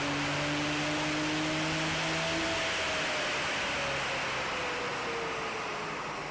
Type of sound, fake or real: real